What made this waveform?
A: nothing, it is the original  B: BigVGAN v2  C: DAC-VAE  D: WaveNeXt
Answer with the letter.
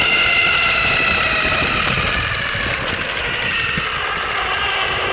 A